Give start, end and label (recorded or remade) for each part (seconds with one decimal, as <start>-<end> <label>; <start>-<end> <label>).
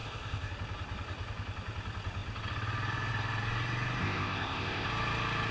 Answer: 0.0-0.5 remade; 0.5-4.0 recorded; 4.0-4.9 remade; 4.9-5.5 recorded